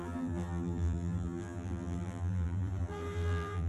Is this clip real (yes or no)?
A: no